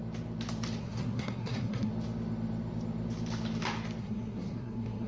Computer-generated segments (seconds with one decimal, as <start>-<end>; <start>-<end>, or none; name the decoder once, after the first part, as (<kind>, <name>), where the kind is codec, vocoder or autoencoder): 0.8-1.9 (codec, SNAC); 4.0-5.1